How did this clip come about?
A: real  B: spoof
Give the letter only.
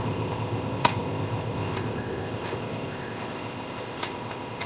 B